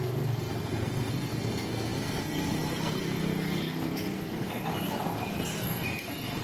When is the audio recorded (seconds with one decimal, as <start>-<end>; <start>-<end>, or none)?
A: none